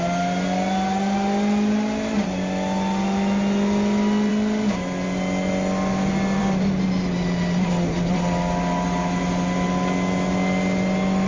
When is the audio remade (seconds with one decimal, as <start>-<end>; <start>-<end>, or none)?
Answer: none